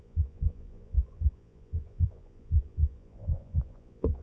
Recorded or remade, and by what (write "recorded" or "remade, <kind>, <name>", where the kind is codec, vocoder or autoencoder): remade, vocoder, Vocos